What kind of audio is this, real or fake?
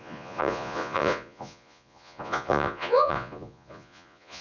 fake